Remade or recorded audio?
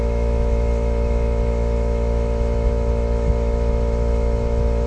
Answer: remade